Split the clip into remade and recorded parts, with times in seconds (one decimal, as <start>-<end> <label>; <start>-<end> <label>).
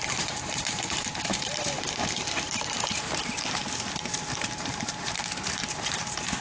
0.0-6.4 remade